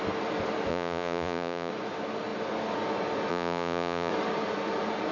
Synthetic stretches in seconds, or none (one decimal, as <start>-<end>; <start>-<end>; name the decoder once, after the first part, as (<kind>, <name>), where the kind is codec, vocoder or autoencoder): 0.7-1.7 (vocoder, Vocos); 3.3-4.1